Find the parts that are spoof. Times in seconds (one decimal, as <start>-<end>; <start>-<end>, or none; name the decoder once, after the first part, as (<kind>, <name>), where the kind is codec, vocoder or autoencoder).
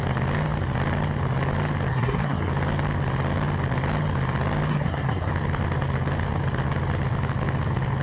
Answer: 1.9-2.5 (codec, SNAC); 4.7-5.3